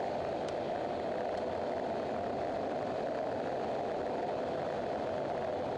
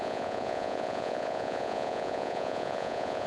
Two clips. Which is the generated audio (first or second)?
second